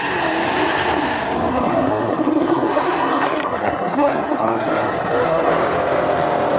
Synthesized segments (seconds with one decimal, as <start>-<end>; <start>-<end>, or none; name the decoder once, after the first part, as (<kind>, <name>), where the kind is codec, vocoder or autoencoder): 1.5-5.5 (codec, SNAC)